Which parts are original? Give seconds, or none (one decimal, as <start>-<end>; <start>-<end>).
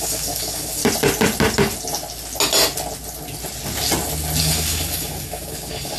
0.8-4.4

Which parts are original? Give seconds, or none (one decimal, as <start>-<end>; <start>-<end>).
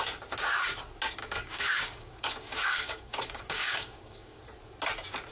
0.0-1.2; 4.4-5.3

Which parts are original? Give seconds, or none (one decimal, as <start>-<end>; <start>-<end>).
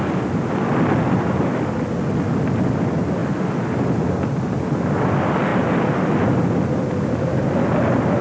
0.0-8.2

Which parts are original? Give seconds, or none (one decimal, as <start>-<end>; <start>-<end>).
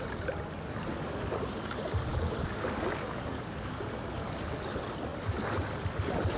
0.0-0.9; 1.7-2.1; 3.8-6.4